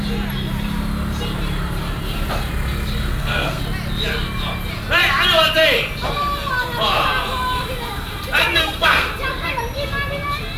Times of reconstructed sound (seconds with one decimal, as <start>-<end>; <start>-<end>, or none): 3.1-3.6; 8.5-9.1